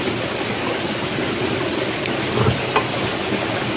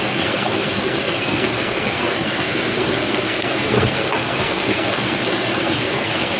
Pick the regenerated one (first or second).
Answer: second